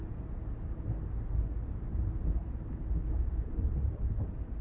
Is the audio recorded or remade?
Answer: recorded